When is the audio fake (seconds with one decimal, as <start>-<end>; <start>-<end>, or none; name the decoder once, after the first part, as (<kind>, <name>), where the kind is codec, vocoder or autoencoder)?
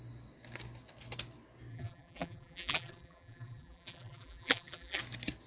1.7-5.0 (vocoder, BigVGAN v2)